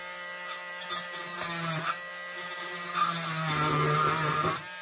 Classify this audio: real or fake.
real